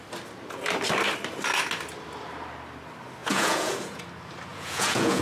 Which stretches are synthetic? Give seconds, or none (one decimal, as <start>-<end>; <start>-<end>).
3.2-4.0; 4.5-5.2